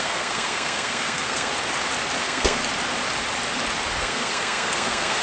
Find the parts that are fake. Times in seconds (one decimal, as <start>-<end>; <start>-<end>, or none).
0.0-1.5; 2.2-2.6; 4.0-5.2